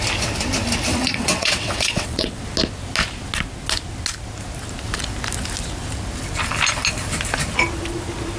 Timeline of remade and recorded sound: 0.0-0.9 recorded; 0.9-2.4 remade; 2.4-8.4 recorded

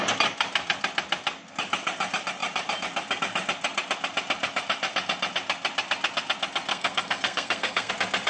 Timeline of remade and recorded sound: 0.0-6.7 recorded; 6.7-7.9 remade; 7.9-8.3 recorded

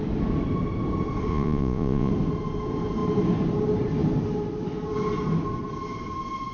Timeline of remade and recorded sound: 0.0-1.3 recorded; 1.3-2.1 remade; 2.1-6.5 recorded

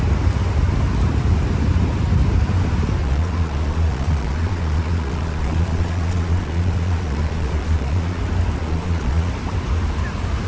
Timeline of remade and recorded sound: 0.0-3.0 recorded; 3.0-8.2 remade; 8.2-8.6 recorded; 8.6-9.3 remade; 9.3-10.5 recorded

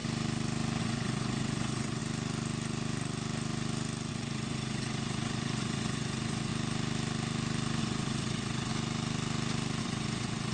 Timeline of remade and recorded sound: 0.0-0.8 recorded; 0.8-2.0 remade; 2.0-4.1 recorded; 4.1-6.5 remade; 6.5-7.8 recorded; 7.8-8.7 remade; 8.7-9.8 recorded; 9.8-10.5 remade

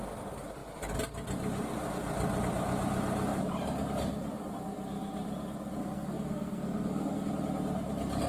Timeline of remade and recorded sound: 0.0-5.8 recorded; 5.8-7.3 remade; 7.3-8.3 recorded

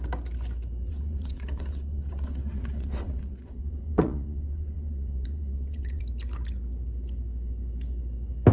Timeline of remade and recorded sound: 0.0-0.9 recorded; 0.9-6.0 remade; 6.0-8.5 recorded